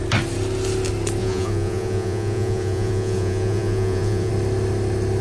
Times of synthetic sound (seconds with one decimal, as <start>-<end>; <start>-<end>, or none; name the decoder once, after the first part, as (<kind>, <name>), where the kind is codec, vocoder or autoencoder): 1.2-4.3 (vocoder, Vocos)

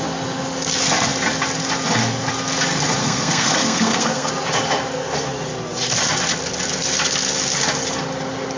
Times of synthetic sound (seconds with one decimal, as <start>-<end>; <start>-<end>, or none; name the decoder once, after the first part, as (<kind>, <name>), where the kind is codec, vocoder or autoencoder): 3.0-4.3 (codec, SNAC)

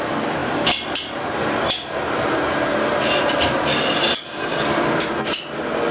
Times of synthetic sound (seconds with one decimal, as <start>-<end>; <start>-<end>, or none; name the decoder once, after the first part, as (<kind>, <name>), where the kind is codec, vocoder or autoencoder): none